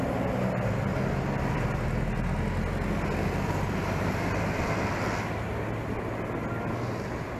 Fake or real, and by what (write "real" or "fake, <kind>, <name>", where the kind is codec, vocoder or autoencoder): real